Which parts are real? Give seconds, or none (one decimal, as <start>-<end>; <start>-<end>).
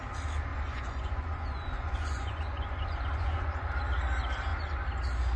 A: 0.0-0.5; 3.7-5.4